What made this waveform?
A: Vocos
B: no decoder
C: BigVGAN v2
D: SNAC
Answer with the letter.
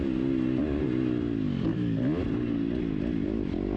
B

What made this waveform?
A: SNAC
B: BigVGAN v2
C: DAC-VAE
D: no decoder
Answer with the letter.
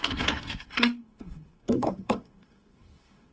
A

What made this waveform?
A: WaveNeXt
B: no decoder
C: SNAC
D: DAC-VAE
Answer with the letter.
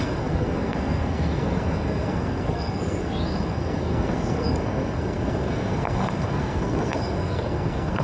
C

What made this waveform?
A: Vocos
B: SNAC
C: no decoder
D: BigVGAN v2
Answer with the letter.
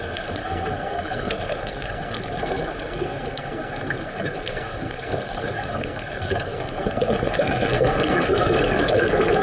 B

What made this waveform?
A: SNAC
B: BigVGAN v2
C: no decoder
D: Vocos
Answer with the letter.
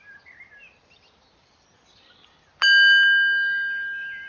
C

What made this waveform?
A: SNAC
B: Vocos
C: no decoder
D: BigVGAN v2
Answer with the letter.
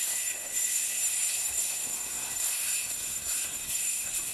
A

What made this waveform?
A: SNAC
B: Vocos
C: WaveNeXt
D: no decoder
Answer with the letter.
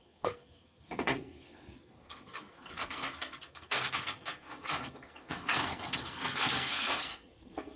A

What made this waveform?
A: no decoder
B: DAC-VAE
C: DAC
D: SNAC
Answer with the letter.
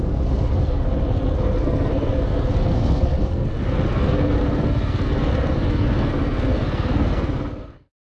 D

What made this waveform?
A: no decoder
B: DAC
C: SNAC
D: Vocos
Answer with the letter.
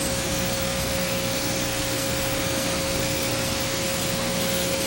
C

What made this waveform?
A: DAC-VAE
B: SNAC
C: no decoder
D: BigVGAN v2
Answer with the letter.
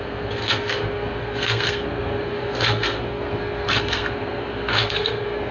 B